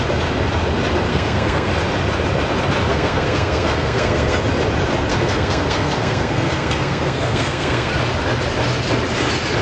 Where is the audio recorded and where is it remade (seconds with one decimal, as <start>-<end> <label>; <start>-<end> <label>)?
0.0-1.1 recorded; 1.1-1.7 remade; 1.7-2.9 recorded; 2.9-4.4 remade; 4.4-5.1 recorded; 5.1-7.9 remade; 7.9-9.6 recorded